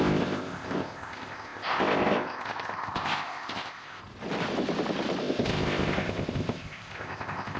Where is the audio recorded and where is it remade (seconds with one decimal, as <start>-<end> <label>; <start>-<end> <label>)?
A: 0.0-4.0 remade; 4.0-5.2 recorded; 5.2-7.6 remade